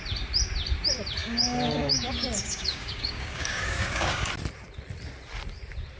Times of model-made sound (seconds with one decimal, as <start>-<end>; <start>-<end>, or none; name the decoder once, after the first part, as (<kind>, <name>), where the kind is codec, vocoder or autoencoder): 1.2-4.3 (codec, DAC)